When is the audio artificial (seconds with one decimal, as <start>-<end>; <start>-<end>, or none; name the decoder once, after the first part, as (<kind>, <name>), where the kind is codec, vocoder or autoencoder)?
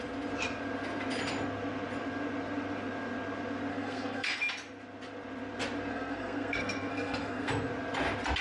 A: 3.7-4.4 (codec, SNAC); 5.9-7.5